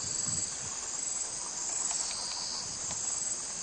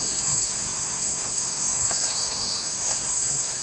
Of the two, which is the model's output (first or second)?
second